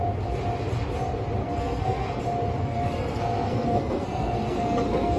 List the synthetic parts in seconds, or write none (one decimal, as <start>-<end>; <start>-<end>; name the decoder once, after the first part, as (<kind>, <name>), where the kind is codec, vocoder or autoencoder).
1.4-2.2 (codec, SNAC); 2.6-5.2